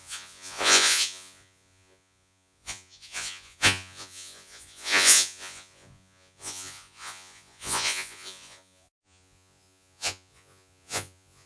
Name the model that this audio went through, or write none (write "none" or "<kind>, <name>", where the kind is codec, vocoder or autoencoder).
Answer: vocoder, Vocos